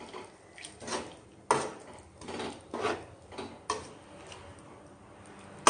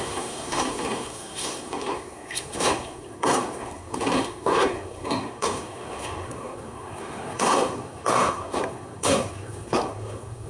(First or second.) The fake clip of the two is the second